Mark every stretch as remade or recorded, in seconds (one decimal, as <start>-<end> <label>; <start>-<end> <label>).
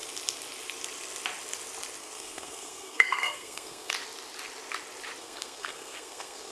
0.0-2.0 recorded; 2.0-3.9 remade; 3.9-5.2 recorded; 5.2-6.5 remade